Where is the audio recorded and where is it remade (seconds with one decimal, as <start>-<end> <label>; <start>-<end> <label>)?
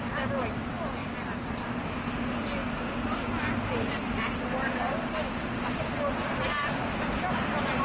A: 0.0-1.0 recorded; 1.0-1.6 remade; 1.6-7.8 recorded